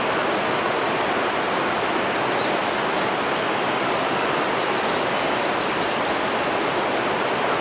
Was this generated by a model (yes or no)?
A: no